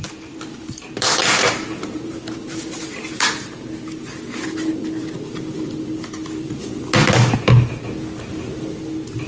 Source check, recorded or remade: recorded